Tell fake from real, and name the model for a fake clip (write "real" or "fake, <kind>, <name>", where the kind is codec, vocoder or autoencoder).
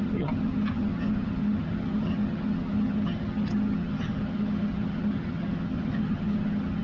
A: fake, vocoder, HiFi-GAN